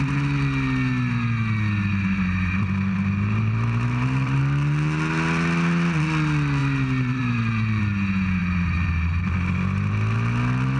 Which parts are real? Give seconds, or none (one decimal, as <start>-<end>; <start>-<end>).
0.0-1.9; 4.4-6.6; 7.8-8.4; 9.2-10.8